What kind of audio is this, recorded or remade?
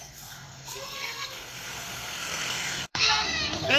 remade